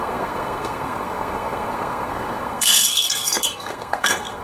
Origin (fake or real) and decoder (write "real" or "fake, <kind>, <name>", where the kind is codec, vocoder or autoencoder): fake, codec, SNAC